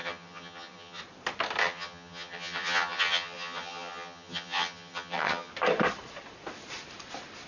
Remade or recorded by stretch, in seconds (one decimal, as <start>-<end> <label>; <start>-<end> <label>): 0.0-1.0 remade; 1.0-1.6 recorded; 1.6-5.5 remade; 5.5-7.5 recorded